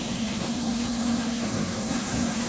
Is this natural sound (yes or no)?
no